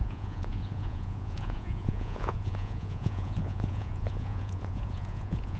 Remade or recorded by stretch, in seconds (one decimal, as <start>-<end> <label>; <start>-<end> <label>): 0.0-5.6 remade